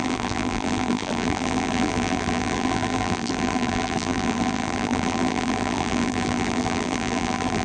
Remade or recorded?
remade